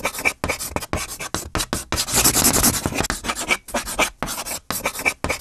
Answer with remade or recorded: recorded